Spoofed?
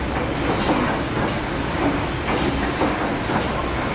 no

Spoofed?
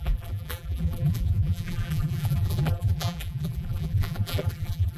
yes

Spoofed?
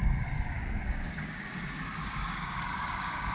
yes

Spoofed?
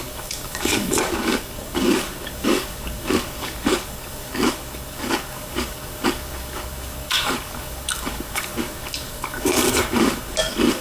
yes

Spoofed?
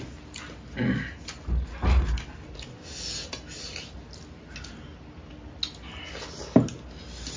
no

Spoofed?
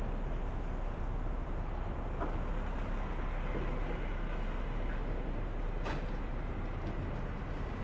no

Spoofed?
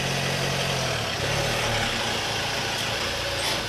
no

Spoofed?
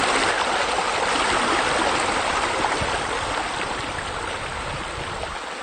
no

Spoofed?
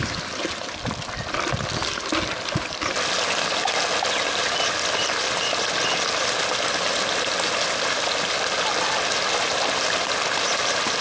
no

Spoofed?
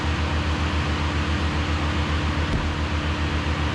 no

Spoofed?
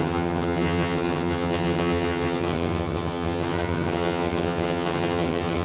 yes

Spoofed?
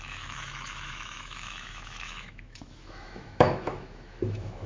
yes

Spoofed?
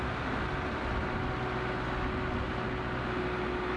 no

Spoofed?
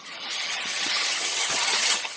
yes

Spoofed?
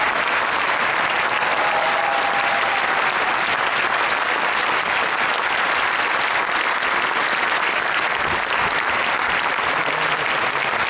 no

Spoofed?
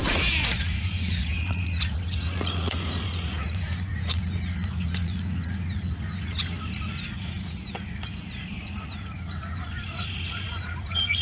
yes